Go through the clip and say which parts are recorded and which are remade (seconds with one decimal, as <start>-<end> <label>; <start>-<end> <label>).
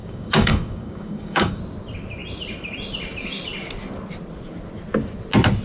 0.0-1.6 remade; 1.6-5.6 recorded